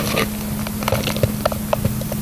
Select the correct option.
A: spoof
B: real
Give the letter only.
B